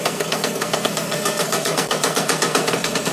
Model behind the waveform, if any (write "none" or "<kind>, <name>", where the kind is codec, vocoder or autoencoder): codec, SNAC